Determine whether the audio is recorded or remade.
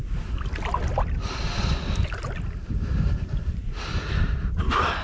recorded